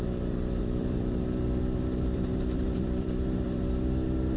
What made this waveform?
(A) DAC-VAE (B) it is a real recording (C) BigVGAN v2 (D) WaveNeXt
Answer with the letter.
C